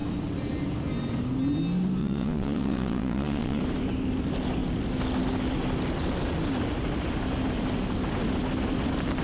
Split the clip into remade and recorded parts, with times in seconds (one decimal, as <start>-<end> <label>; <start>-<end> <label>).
0.0-2.0 recorded; 2.0-3.6 remade; 3.6-9.2 recorded